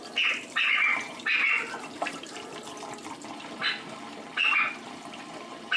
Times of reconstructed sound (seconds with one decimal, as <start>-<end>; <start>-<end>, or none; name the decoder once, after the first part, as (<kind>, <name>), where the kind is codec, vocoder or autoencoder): 0.9-2.5 (vocoder, BigVGAN v2)